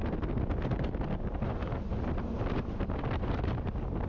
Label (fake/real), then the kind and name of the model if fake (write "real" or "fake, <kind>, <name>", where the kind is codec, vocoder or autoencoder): real